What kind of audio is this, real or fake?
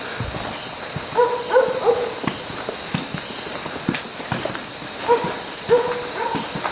real